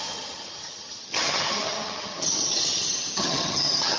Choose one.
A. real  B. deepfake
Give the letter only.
B